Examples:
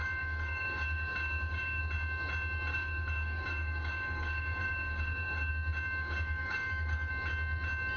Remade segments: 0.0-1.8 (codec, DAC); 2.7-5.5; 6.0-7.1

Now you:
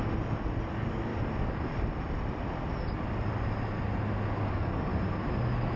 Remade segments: 0.7-1.1 (codec, DAC); 4.5-4.9

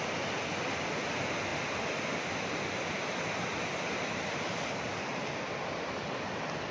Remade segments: none